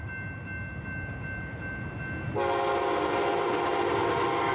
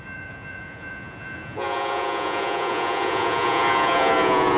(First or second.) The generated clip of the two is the second